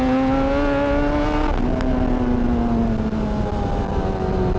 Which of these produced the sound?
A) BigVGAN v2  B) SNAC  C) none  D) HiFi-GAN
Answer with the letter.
C